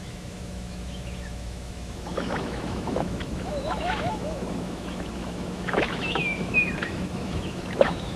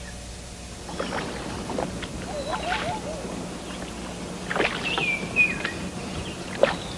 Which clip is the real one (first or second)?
second